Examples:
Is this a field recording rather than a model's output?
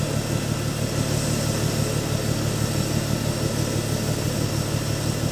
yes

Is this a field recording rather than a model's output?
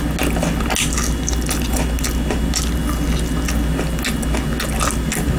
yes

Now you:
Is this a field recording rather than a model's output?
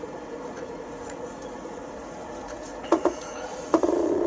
no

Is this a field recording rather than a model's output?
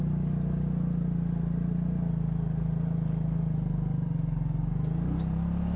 yes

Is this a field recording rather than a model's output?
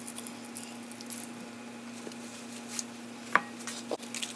yes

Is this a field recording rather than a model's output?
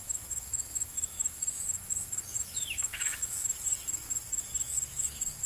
no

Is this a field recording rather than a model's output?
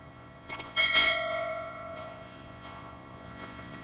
no